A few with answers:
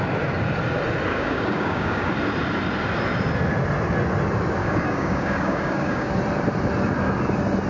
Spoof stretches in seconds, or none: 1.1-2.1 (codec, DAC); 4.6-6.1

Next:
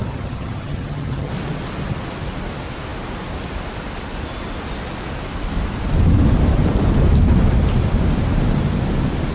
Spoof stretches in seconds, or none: 0.0-1.3 (vocoder, HiFi-GAN)

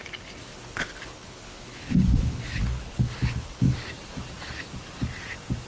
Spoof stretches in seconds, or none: 0.5-3.9 (codec, HILCodec)

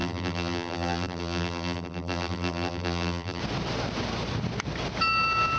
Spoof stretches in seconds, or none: 0.0-3.4 (vocoder, BigVGAN v2)

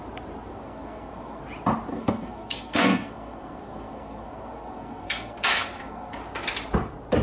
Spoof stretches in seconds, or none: 0.5-1.4 (codec, SNAC); 1.9-6.2